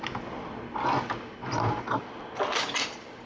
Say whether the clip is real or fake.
real